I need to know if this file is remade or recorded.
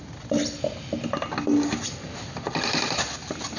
recorded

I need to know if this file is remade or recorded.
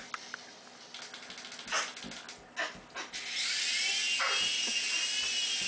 recorded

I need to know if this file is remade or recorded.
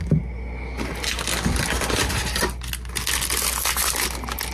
recorded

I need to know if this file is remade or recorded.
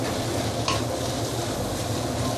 recorded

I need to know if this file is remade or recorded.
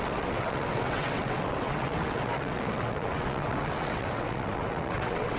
remade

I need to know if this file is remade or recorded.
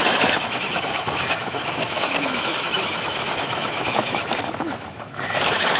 remade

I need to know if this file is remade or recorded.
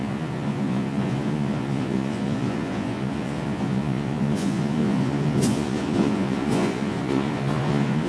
remade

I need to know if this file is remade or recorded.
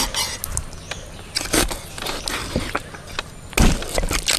recorded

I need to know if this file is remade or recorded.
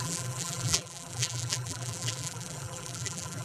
remade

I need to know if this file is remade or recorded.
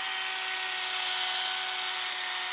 recorded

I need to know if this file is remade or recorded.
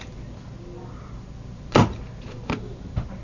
recorded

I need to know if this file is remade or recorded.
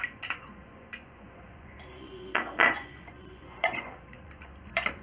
remade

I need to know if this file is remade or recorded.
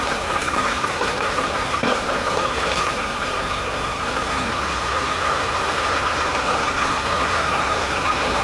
remade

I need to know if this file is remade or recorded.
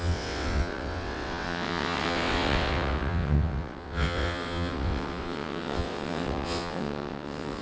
remade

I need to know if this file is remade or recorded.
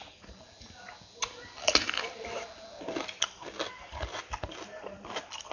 recorded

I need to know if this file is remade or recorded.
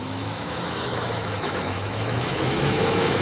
remade